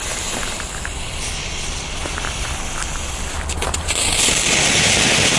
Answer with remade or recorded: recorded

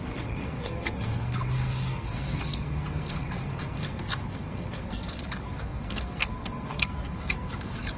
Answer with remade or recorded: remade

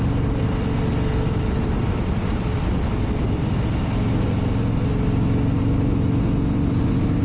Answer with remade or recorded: recorded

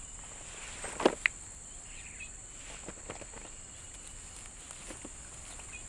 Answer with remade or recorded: recorded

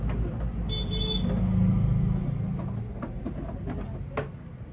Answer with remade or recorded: recorded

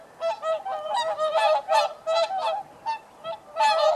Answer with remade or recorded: recorded